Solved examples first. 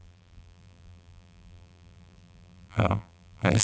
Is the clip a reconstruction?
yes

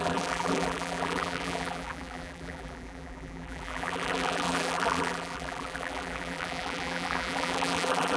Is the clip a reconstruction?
yes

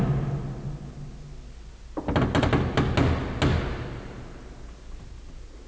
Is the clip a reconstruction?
no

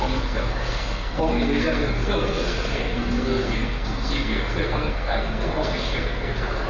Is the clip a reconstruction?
yes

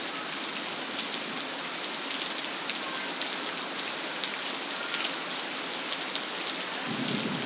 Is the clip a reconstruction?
no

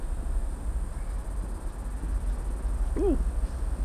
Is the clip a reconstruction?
no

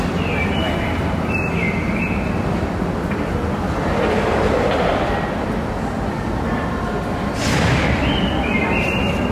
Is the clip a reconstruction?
no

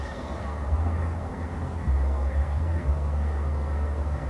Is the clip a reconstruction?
yes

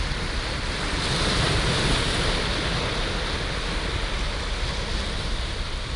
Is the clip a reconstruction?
no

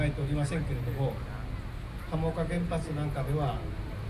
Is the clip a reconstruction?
no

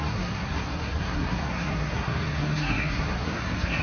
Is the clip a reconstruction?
yes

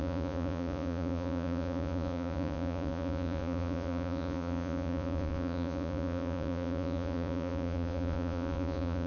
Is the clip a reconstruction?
yes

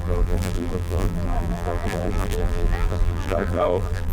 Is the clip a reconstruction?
yes